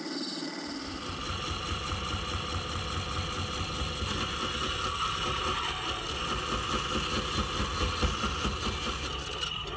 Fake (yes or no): no